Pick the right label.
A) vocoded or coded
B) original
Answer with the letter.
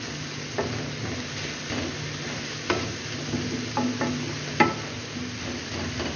B